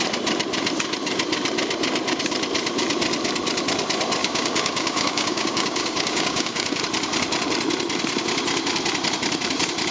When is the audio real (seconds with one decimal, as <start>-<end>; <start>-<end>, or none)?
0.0-4.2; 6.8-9.9